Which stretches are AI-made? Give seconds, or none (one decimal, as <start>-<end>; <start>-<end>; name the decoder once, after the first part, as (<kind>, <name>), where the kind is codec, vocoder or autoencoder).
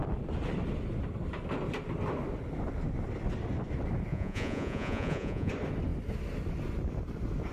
4.1-5.5 (vocoder, Vocos)